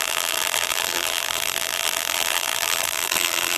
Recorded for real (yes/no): no